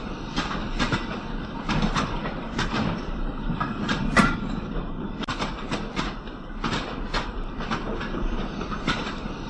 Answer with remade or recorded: remade